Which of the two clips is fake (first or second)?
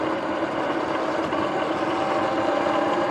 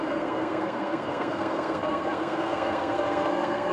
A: second